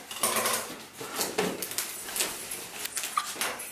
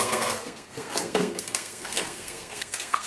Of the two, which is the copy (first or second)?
second